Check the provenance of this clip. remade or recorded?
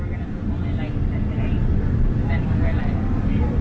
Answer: recorded